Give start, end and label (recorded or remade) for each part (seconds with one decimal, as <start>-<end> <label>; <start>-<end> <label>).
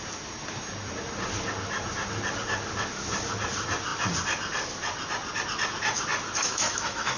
0.0-6.4 recorded; 6.4-7.2 remade